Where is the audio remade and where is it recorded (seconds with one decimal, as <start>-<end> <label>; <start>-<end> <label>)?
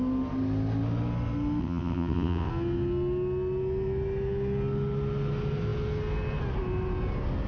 0.0-1.6 recorded; 1.6-2.5 remade; 2.5-7.5 recorded